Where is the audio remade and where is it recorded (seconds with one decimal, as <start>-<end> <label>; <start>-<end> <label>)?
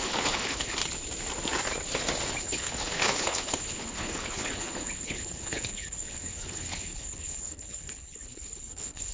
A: 0.0-0.8 remade; 0.8-2.4 recorded; 2.4-9.1 remade